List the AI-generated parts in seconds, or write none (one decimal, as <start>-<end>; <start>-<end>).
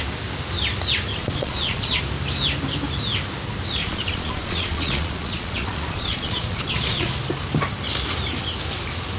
1.2-2.0; 3.8-7.1